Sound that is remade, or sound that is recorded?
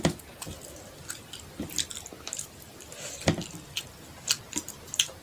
recorded